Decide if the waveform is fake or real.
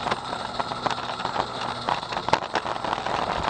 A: real